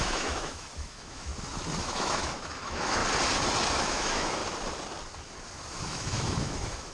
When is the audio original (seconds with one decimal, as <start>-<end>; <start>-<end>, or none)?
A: 1.3-1.8; 3.0-3.7; 4.4-5.8